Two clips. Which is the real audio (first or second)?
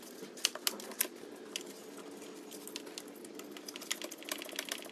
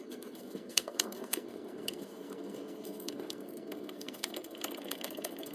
first